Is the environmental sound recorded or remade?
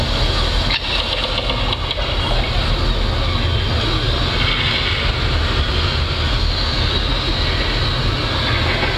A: recorded